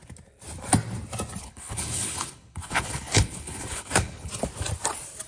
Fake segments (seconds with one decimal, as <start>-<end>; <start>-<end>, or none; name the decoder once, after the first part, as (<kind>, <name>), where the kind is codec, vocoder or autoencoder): 1.4-4.3 (codec, HILCodec)